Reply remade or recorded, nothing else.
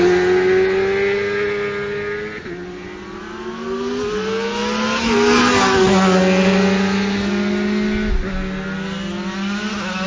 recorded